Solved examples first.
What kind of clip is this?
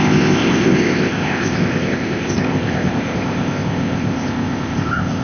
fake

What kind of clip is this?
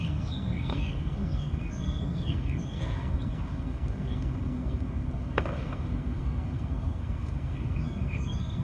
fake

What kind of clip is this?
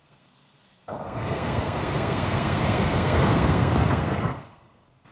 fake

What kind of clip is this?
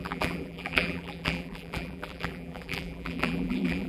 fake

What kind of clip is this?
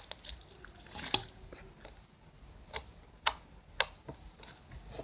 real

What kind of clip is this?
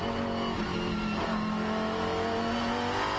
real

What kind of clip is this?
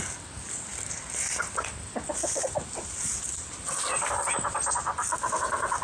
real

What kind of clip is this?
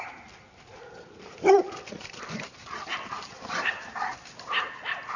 fake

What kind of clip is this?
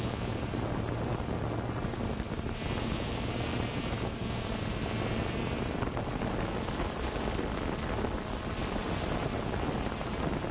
real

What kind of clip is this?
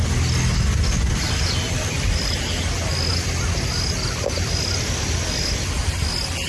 real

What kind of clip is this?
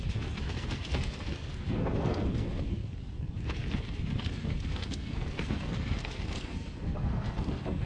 fake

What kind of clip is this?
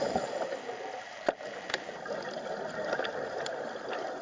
fake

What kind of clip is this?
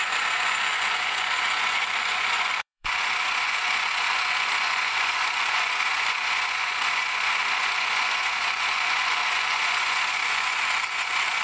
fake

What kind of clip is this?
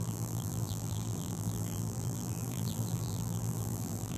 fake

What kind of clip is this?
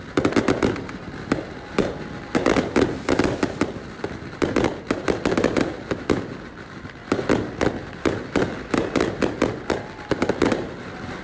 real